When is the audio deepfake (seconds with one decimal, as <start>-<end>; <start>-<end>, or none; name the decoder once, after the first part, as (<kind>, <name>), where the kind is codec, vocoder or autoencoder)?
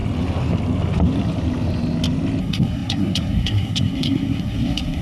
2.4-5.0 (codec, SNAC)